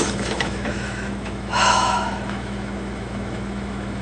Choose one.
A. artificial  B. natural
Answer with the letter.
A